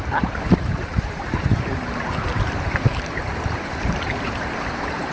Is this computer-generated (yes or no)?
yes